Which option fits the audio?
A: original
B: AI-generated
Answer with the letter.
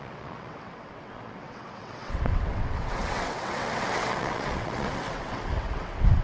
B